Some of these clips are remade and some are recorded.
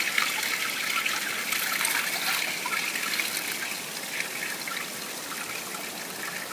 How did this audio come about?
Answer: recorded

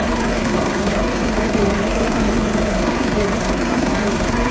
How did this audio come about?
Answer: remade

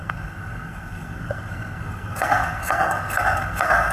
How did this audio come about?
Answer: remade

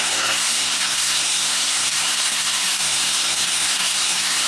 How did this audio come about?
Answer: remade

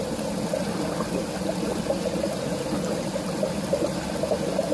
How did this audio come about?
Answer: recorded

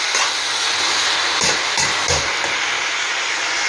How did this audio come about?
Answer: recorded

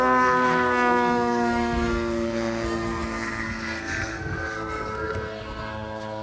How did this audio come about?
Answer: remade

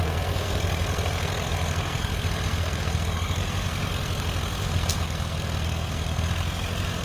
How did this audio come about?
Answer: remade